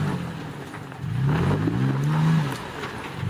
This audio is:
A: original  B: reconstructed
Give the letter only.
A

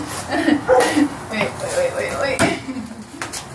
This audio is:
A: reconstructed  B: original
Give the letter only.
B